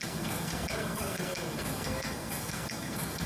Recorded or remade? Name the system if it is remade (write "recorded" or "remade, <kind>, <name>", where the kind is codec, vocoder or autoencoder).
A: remade, codec, SNAC